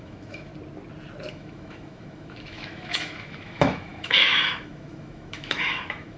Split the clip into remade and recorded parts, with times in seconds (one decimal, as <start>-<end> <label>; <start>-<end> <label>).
0.0-0.5 remade; 0.5-1.3 recorded; 1.3-6.2 remade